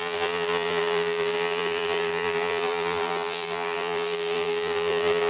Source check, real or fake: fake